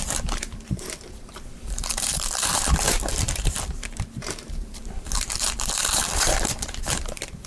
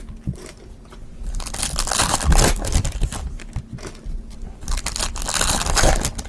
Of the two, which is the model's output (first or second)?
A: first